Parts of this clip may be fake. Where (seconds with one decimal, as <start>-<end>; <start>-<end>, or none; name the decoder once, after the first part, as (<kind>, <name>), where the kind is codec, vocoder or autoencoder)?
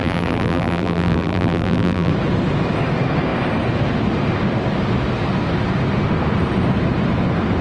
0.0-2.1 (vocoder, BigVGAN v2)